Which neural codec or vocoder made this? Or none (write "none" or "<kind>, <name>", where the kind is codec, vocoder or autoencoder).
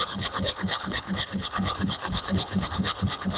codec, HILCodec